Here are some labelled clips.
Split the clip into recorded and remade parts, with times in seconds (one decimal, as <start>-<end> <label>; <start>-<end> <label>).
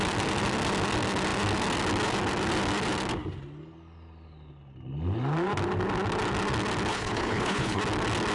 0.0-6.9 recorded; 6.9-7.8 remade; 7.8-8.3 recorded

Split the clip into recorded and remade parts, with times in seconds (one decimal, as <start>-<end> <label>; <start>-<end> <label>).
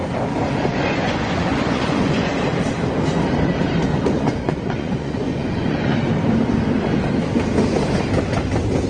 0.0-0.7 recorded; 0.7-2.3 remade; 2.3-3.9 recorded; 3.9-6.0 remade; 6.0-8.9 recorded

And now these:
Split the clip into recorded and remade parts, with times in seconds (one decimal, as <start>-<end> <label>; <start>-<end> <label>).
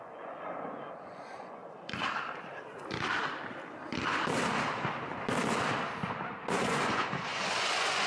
0.0-1.6 remade; 1.6-6.5 recorded; 6.5-8.1 remade